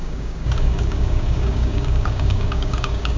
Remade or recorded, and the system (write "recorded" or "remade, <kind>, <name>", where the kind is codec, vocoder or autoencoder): remade, codec, DAC